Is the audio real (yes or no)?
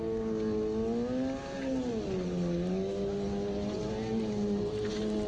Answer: yes